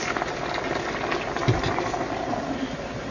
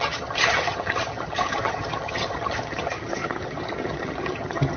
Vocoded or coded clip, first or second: second